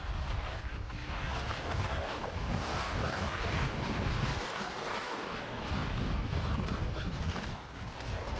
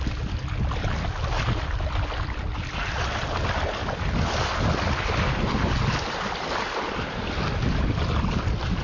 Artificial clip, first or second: first